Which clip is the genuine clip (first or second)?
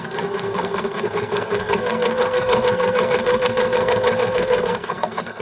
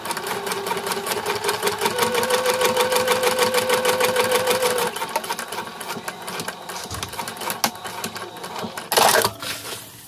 second